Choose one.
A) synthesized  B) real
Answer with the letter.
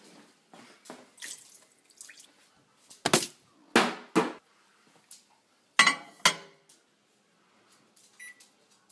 B